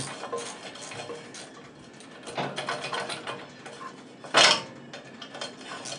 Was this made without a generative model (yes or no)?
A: yes